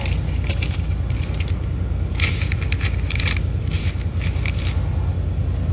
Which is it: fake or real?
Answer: real